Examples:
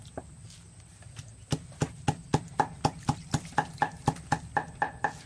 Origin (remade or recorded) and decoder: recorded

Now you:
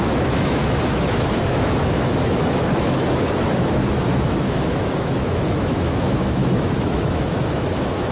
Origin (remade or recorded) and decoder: remade, autoencoder, DAC-VAE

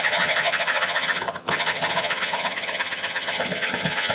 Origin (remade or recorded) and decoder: remade, vocoder, HiFi-GAN